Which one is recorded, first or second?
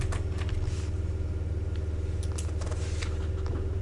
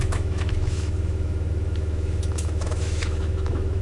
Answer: first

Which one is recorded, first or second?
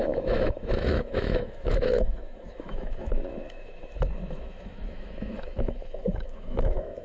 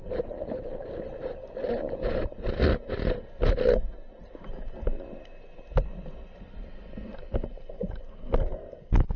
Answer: second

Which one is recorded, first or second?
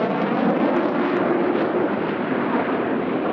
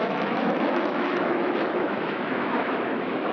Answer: first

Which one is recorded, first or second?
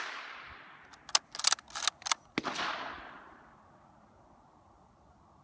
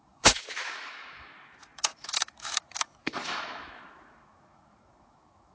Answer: first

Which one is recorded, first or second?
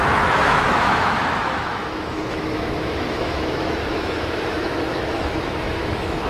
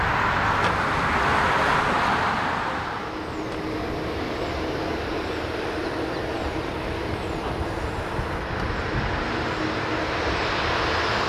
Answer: second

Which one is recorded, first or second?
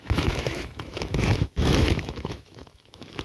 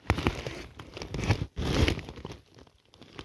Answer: second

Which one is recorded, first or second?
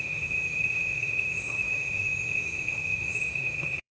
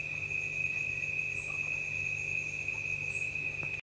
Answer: second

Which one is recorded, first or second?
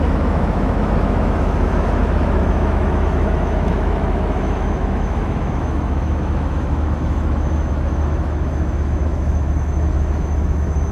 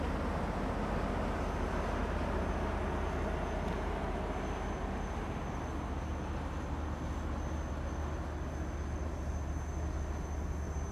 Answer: second